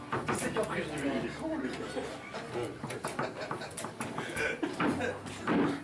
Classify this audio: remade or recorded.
recorded